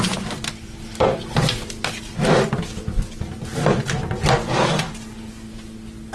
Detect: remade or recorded recorded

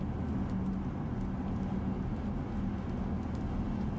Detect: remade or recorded recorded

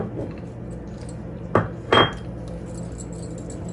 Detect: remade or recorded recorded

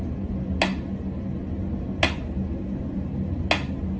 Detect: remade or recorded recorded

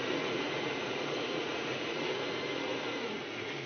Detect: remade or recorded remade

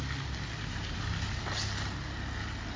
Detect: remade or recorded recorded